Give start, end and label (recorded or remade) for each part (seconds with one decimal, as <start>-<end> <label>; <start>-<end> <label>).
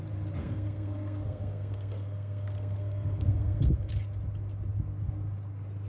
0.0-0.4 recorded; 0.4-3.9 remade; 3.9-5.9 recorded